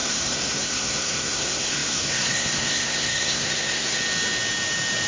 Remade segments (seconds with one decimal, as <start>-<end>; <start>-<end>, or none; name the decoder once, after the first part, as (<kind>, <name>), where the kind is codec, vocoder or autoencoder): 0.0-4.0 (codec, SNAC)